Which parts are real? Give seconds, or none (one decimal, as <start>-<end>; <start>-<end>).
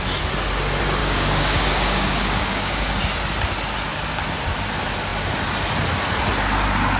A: 0.0-1.0; 3.0-7.0